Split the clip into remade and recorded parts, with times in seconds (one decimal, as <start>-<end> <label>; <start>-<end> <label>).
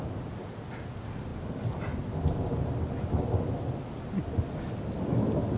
0.0-5.6 recorded